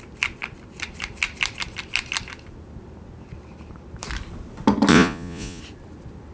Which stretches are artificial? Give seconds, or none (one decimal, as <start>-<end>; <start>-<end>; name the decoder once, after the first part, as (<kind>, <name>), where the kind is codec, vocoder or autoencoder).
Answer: 4.9-5.6 (vocoder, Vocos)